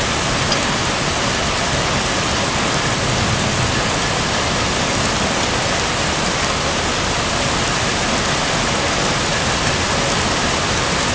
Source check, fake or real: fake